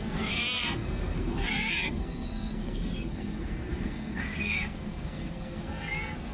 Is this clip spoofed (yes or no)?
yes